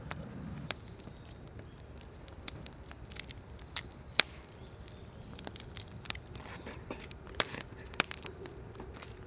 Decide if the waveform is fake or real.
fake